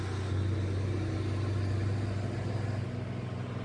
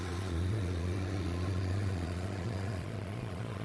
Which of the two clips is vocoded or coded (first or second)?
second